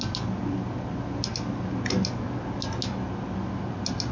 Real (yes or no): yes